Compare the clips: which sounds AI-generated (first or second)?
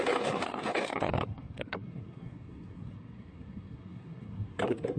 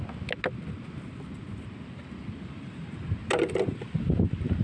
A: first